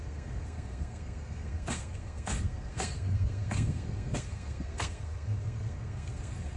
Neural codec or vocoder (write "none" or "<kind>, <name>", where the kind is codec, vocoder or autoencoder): codec, SNAC